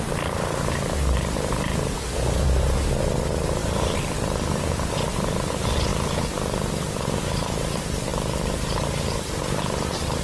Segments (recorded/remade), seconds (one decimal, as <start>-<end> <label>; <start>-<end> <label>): 0.0-5.9 remade; 5.9-6.9 recorded; 6.9-10.2 remade